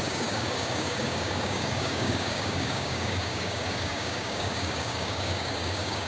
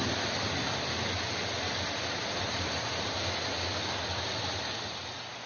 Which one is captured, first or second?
second